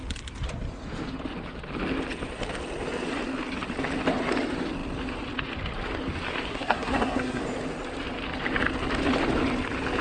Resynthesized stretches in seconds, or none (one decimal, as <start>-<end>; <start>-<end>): 6.5-7.4